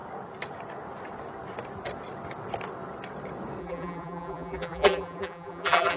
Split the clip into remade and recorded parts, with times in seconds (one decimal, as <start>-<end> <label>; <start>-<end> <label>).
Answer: 0.0-3.6 recorded; 3.6-6.0 remade